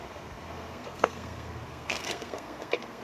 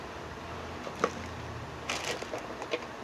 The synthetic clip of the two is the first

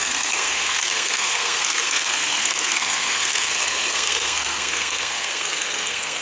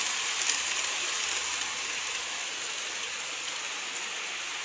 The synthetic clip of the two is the first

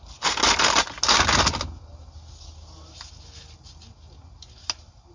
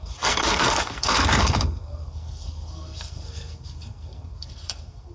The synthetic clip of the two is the second